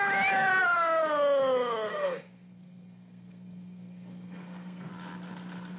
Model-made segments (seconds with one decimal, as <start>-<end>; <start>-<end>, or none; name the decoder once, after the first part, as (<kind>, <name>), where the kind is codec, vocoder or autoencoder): 1.9-4.9 (codec, SNAC)